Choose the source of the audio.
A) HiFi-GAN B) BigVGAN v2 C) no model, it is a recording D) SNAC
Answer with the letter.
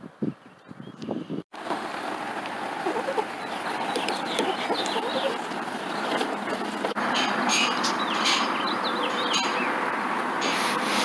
B